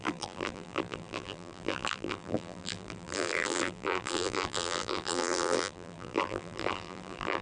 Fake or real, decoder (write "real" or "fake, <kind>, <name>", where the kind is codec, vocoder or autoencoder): fake, vocoder, BigVGAN v2